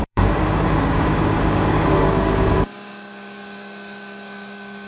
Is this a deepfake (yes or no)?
yes